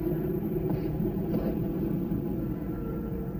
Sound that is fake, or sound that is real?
real